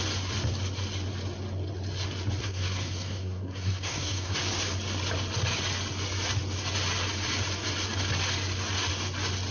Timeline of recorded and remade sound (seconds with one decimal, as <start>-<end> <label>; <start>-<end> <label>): 0.0-2.4 recorded; 2.4-4.4 remade; 4.4-9.5 recorded